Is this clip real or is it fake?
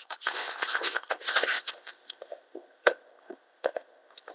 fake